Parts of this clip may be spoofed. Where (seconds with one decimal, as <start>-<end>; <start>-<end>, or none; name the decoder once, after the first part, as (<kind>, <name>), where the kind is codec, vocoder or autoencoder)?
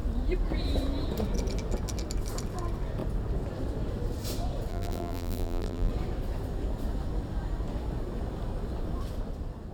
4.7-5.9 (vocoder, BigVGAN v2)